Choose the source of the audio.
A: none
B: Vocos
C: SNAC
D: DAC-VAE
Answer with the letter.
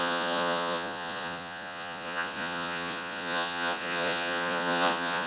B